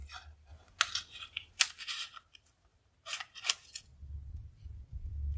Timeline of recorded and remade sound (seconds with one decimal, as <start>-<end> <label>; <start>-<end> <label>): 0.0-5.4 recorded

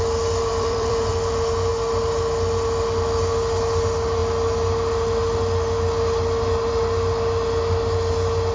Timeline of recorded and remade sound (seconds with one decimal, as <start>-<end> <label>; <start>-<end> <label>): 0.0-0.5 recorded; 0.5-1.1 remade; 1.1-8.5 recorded

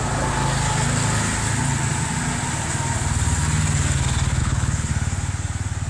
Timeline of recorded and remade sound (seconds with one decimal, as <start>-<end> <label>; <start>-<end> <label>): 0.0-4.4 recorded; 4.4-4.9 remade; 4.9-5.9 recorded

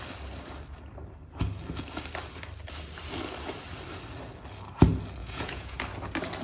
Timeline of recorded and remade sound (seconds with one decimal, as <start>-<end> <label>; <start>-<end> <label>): 0.0-5.2 recorded; 5.2-5.8 remade; 5.8-6.4 recorded

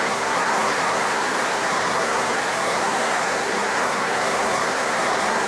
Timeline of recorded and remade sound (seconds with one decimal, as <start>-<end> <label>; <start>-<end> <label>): 0.0-5.5 remade

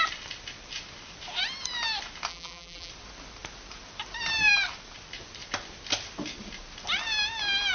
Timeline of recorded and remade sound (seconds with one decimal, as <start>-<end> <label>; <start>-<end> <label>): 0.0-2.3 recorded; 2.3-2.9 remade; 2.9-7.7 recorded

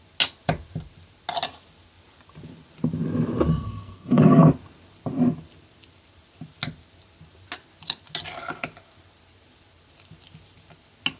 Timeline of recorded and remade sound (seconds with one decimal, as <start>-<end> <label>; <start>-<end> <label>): 0.0-3.5 recorded; 3.5-4.5 remade; 4.5-11.2 recorded